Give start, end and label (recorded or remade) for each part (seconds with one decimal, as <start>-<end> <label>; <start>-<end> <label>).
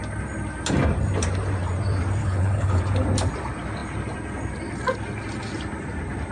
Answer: 0.0-2.2 recorded; 2.2-2.8 remade; 2.8-6.3 recorded